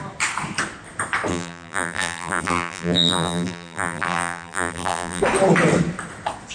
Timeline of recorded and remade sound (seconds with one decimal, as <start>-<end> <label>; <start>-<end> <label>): 0.0-1.3 recorded; 1.3-5.2 remade; 5.2-6.5 recorded